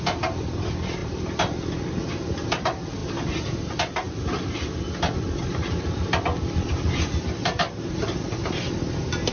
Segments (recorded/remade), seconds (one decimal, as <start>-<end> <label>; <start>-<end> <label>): 0.0-9.3 recorded